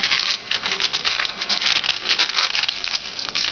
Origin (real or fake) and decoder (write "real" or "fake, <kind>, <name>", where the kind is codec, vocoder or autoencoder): fake, codec, SNAC